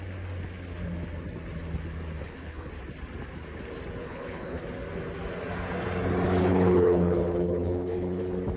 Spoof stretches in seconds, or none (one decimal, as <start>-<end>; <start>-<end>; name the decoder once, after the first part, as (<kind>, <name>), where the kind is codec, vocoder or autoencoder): 2.2-2.7 (codec, HILCodec); 4.0-4.6; 6.4-8.2